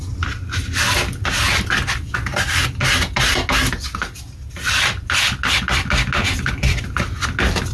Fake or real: real